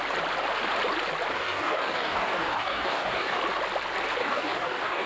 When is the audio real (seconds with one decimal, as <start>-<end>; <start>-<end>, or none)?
0.0-1.3; 3.4-4.2